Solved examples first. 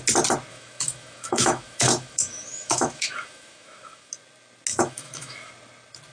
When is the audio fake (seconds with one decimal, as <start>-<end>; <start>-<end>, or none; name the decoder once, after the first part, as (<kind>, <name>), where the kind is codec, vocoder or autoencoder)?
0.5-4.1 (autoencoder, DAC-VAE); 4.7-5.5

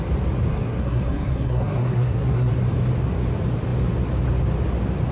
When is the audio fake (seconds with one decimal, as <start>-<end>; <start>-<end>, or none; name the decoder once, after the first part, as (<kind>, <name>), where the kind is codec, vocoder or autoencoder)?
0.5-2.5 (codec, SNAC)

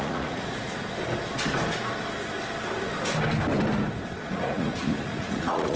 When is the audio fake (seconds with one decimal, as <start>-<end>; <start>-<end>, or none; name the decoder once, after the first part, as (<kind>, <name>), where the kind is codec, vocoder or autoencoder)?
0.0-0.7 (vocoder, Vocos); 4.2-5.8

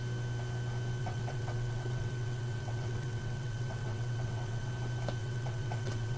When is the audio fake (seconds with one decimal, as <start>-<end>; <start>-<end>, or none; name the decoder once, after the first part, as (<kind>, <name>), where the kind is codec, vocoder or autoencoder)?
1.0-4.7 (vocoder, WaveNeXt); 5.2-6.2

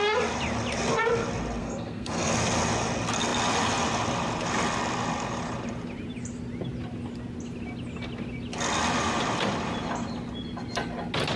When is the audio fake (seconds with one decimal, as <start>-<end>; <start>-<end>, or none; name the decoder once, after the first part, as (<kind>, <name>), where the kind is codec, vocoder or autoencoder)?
1.6-2.3 (codec, SNAC)

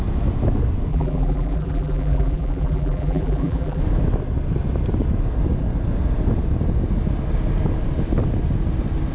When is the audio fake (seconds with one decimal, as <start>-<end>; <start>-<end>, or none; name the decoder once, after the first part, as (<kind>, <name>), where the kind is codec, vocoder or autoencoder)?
0.9-3.8 (vocoder, BigVGAN v2)

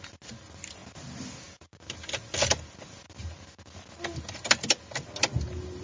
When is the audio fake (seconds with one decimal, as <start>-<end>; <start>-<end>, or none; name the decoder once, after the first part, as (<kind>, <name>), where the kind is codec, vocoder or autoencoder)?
none

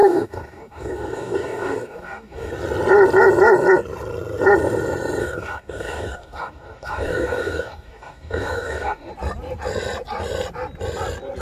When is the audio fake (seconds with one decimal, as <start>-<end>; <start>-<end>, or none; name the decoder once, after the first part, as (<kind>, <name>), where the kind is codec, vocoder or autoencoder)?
0.0-2.5 (codec, DAC); 5.2-9.1